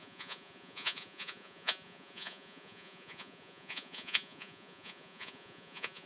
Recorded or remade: remade